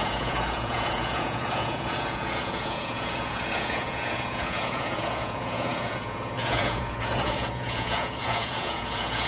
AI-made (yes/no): yes